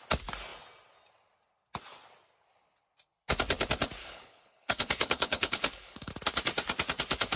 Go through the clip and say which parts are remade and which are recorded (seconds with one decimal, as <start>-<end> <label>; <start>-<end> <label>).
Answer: 0.0-4.0 recorded; 4.0-6.1 remade; 6.1-7.4 recorded